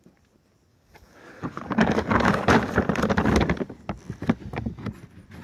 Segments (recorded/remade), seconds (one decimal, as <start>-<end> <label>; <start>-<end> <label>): 0.0-0.7 recorded; 0.7-2.5 remade; 2.5-5.4 recorded